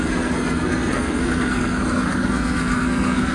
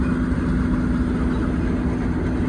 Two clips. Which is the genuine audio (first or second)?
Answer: second